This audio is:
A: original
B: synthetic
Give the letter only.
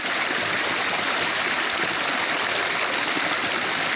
A